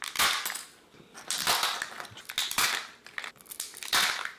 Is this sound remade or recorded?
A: recorded